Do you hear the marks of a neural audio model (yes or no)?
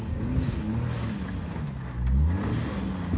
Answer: no